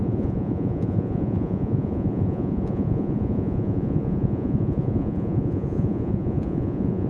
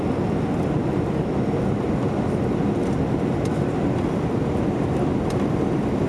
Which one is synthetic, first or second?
first